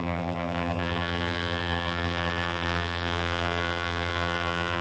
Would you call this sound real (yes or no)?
no